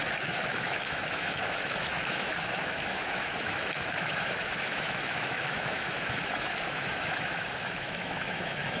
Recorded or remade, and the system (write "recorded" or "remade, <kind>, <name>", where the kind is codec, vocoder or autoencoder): remade, autoencoder, DAC-VAE